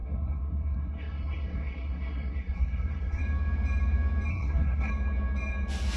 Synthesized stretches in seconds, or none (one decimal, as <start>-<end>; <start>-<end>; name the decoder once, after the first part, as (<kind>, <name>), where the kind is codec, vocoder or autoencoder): 0.0-3.2 (codec, SNAC); 4.3-4.9